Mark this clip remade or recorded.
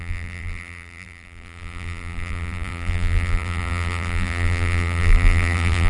remade